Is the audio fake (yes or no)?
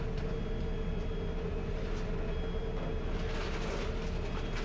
no